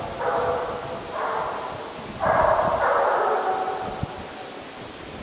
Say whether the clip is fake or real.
real